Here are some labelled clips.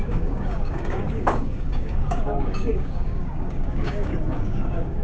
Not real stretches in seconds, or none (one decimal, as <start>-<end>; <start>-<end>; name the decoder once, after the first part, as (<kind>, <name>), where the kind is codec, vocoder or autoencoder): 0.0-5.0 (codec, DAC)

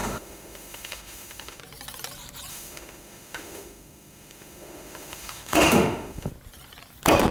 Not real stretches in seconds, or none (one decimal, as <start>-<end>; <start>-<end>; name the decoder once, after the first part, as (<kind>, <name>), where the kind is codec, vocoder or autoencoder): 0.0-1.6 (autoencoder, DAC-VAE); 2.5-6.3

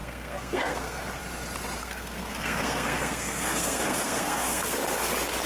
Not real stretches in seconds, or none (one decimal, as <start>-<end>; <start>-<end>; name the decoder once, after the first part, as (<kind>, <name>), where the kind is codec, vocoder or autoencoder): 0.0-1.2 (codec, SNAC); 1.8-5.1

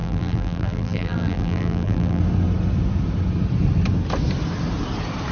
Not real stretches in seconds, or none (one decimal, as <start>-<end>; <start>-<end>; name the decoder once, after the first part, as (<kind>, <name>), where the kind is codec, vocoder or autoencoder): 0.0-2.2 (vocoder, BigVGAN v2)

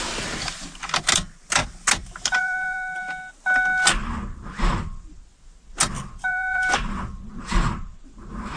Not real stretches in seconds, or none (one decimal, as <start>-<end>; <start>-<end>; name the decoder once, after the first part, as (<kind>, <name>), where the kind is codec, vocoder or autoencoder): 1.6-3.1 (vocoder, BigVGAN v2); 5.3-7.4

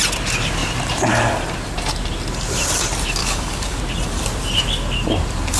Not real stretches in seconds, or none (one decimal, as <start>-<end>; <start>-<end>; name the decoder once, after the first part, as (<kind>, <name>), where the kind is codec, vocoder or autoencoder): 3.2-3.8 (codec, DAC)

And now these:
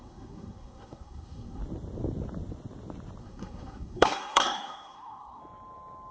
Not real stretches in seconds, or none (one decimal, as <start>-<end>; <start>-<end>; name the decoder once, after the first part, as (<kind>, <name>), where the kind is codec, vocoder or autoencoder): 0.0-1.6 (codec, SNAC); 3.2-5.4